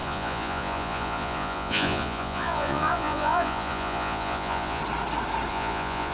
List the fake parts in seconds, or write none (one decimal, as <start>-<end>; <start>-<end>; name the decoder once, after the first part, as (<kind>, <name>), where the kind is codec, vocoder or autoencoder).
0.0-4.8 (vocoder, Vocos); 5.5-6.1